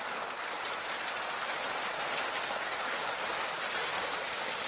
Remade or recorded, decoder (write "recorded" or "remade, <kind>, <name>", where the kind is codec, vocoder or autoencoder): recorded